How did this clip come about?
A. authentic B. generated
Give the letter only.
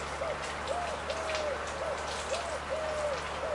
A